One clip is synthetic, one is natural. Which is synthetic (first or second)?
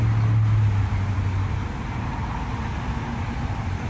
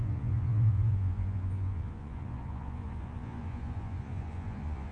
second